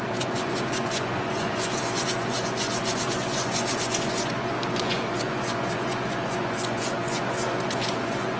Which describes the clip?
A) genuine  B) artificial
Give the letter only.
B